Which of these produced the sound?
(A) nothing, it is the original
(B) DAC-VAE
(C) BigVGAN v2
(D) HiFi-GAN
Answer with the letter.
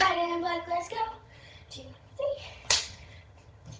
D